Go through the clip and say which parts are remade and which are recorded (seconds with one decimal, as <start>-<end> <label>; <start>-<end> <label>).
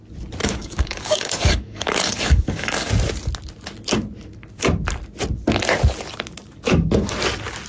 0.0-0.4 recorded; 0.4-2.9 remade; 2.9-7.7 recorded